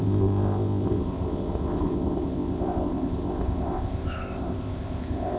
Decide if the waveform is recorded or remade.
remade